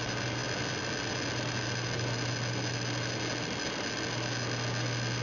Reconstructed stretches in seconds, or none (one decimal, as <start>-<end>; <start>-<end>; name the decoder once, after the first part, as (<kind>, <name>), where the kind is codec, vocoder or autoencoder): none